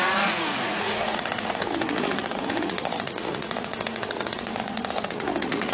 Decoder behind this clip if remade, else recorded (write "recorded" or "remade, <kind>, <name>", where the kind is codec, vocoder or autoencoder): remade, vocoder, Vocos